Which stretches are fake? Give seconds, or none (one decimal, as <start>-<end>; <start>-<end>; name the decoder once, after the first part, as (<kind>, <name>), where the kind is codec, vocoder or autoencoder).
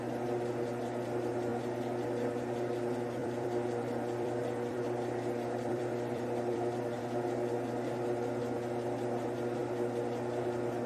3.2-7.0 (vocoder, BigVGAN v2)